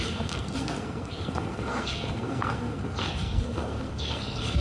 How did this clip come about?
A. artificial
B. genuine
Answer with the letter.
A